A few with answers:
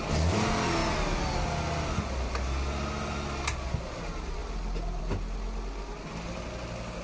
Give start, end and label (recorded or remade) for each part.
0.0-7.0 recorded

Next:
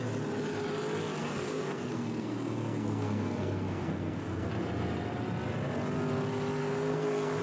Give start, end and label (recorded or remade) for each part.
0.0-1.2 recorded; 1.2-4.5 remade; 4.5-6.6 recorded; 6.6-7.4 remade

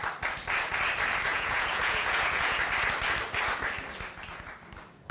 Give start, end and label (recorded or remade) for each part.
0.0-1.3 recorded; 1.3-2.6 remade; 2.6-5.1 recorded

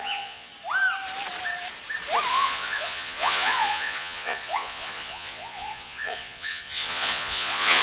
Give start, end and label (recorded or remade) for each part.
0.0-0.5 remade; 0.5-2.3 recorded; 2.3-7.8 remade

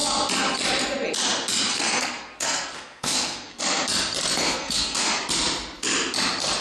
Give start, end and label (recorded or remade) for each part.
0.0-1.7 recorded; 1.7-3.6 remade; 3.6-4.4 recorded; 4.4-5.2 remade; 5.2-6.6 recorded

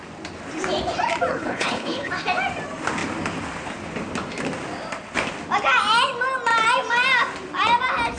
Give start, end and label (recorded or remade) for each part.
0.0-1.3 recorded; 1.3-2.1 remade; 2.1-8.2 recorded

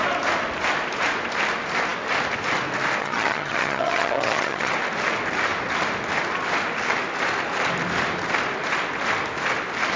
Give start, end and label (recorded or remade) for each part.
0.0-3.0 recorded; 3.0-4.7 remade; 4.7-10.0 recorded

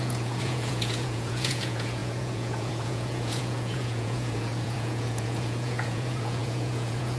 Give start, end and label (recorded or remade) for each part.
0.0-7.2 remade